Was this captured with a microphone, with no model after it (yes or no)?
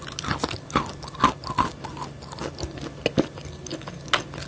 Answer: yes